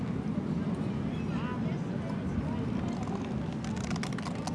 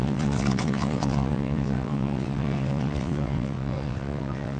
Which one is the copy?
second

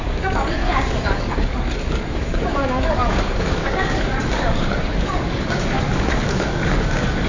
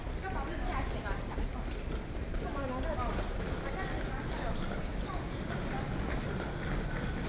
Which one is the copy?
first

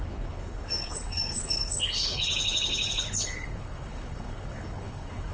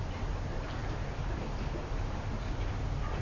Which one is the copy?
first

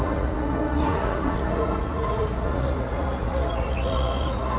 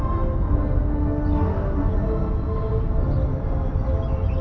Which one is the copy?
first